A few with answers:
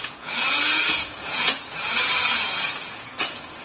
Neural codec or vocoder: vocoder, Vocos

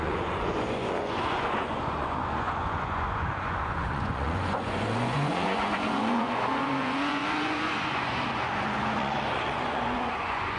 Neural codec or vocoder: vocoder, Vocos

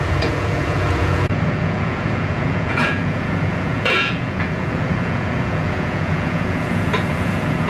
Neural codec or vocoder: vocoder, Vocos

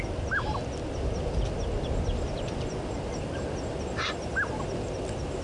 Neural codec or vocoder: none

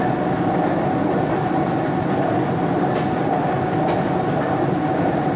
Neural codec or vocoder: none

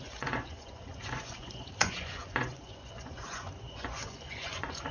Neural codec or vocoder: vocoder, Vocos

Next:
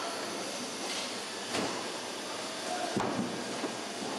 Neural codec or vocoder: none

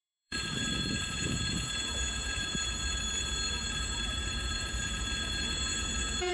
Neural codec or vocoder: vocoder, Vocos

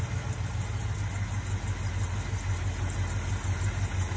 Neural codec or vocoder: none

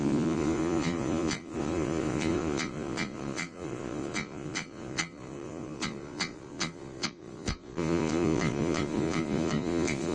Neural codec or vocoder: vocoder, Vocos